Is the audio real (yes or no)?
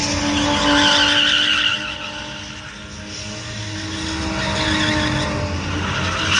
yes